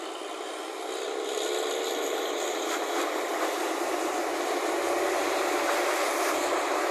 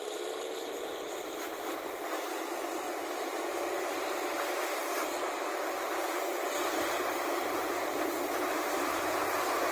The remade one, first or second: second